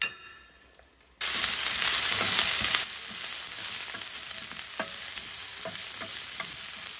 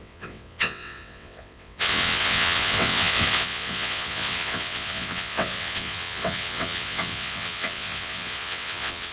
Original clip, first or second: first